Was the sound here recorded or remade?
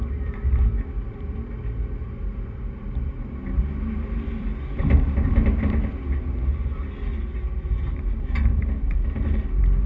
remade